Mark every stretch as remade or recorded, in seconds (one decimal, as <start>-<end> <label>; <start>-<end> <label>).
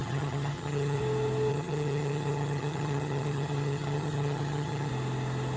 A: 0.0-1.0 remade; 1.0-1.5 recorded; 1.5-4.9 remade; 4.9-5.6 recorded